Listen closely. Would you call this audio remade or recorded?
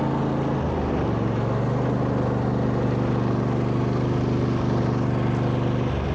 recorded